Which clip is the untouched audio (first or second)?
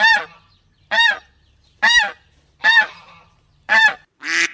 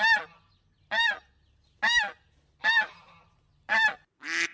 second